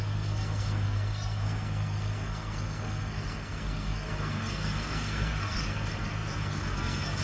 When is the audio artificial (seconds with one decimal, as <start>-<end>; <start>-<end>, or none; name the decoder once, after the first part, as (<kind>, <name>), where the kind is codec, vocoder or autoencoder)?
0.0-7.2 (codec, SNAC)